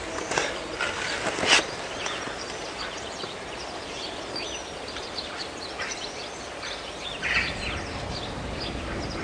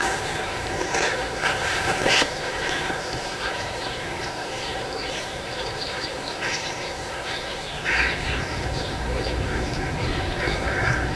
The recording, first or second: first